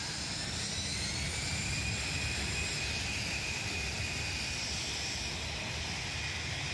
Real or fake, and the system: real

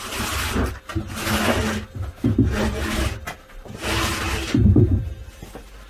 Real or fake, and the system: real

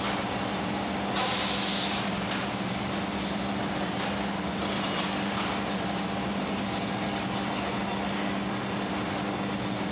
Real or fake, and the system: real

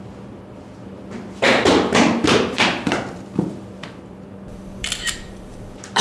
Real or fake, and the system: fake, vocoder, BigVGAN v2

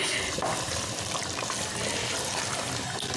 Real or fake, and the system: real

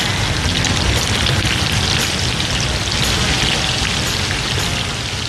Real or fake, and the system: real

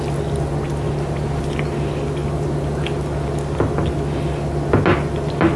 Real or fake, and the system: real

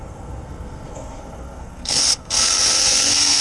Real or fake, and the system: fake, codec, SNAC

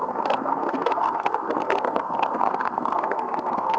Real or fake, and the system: fake, codec, SNAC